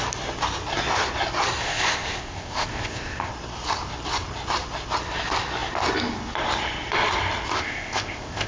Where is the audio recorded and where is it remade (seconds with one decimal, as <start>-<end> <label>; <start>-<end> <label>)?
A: 0.0-1.6 recorded; 1.6-3.3 remade; 3.3-7.5 recorded; 7.5-8.5 remade